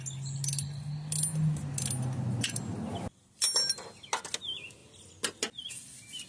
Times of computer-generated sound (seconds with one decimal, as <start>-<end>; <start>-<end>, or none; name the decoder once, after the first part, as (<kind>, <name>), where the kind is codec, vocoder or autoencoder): none